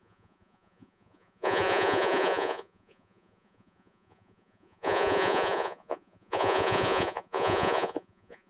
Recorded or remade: remade